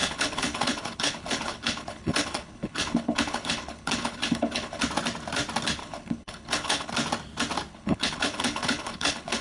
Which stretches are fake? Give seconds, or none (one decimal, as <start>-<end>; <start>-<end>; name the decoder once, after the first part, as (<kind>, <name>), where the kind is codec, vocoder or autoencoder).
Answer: 0.0-4.8 (codec, HILCodec); 5.8-6.9; 7.7-9.4